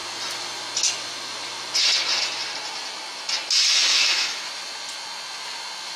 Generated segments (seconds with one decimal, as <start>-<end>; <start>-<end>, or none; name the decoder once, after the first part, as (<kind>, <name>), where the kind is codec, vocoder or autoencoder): 3.9-4.5 (autoencoder, DAC-VAE)